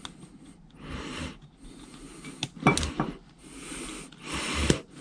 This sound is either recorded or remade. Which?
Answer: recorded